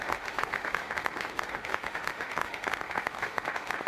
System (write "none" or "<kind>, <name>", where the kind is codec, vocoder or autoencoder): autoencoder, DAC-VAE